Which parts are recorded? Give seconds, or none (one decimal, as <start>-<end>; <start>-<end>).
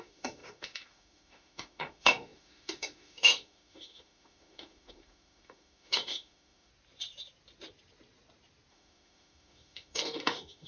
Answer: 6.7-8.7